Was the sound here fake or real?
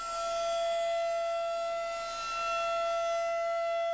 real